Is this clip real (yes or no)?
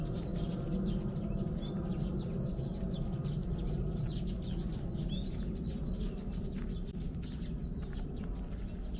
yes